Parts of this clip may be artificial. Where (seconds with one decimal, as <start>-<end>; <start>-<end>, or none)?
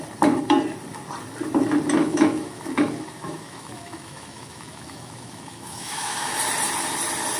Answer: 2.0-6.4